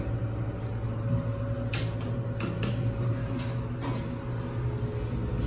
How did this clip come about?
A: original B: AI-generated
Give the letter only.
A